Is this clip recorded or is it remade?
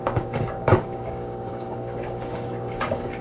remade